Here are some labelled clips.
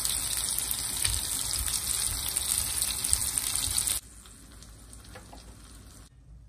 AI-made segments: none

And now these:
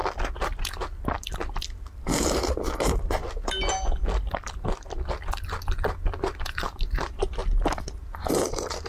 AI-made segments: 2.4-3.2; 6.4-7.4; 8.3-8.9

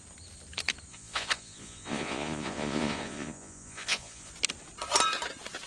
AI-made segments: 0.9-4.3

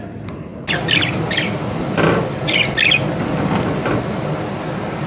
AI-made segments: none

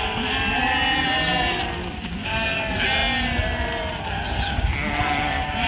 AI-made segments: none

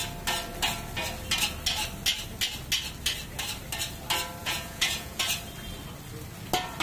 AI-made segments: 4.4-5.2

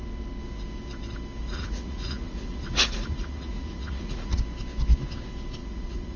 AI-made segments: 1.4-4.4; 5.6-6.2

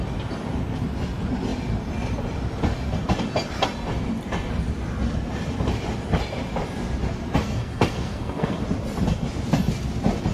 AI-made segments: 7.4-8.6